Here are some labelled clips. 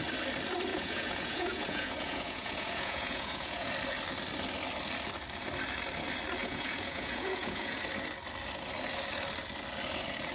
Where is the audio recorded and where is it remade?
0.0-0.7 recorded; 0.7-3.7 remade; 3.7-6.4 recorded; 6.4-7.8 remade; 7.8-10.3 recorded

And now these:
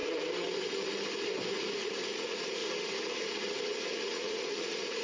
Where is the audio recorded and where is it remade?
0.0-1.7 recorded; 1.7-2.6 remade; 2.6-4.0 recorded; 4.0-5.0 remade

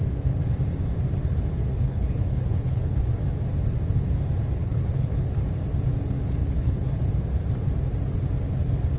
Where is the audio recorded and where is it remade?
0.0-1.7 recorded; 1.7-3.1 remade; 3.1-4.6 recorded; 4.6-5.4 remade; 5.4-6.4 recorded; 6.4-7.1 remade; 7.1-9.0 recorded

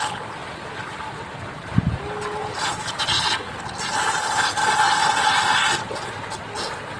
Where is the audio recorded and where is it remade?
0.0-2.4 recorded; 2.4-3.0 remade; 3.0-7.0 recorded

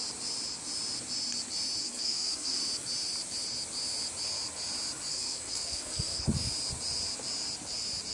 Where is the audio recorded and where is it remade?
0.0-1.8 recorded; 1.8-2.6 remade; 2.6-5.1 recorded; 5.1-6.3 remade; 6.3-8.1 recorded